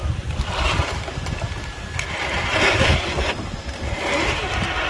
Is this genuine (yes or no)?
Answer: no